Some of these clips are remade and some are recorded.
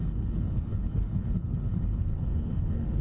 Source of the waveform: remade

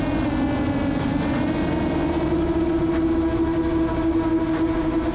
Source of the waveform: recorded